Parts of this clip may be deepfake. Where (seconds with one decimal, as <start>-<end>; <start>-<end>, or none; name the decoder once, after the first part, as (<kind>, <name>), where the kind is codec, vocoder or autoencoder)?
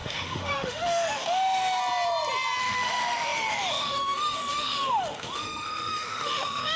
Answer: 0.0-1.8 (autoencoder, DAC-VAE); 2.6-6.8